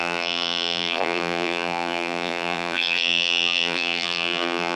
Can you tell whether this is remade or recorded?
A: remade